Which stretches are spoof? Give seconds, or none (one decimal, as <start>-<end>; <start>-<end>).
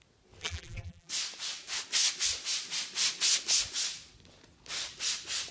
0.4-1.1